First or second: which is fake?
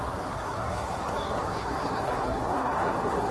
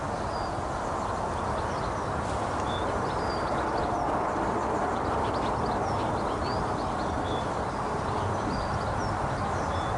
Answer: first